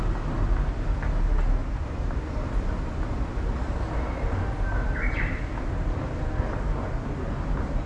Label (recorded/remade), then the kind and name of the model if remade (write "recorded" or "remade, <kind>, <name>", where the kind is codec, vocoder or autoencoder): recorded